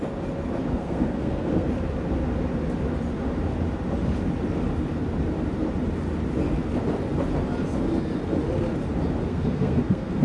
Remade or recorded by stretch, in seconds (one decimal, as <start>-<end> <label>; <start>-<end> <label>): 0.0-0.7 recorded; 0.7-1.7 remade; 1.7-9.3 recorded; 9.3-10.2 remade